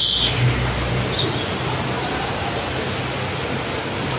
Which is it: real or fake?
real